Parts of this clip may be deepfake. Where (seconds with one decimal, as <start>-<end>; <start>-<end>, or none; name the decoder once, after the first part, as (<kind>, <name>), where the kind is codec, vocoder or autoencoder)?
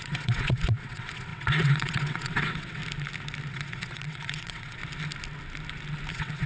0.0-2.8 (vocoder, WaveNeXt); 3.5-4.8; 6.1-6.5